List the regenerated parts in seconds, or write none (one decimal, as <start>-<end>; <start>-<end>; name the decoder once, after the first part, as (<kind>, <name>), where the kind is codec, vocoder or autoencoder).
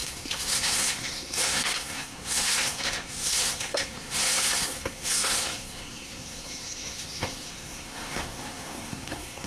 0.0-9.5 (codec, SNAC)